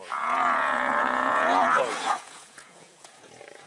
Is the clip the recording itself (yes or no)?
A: no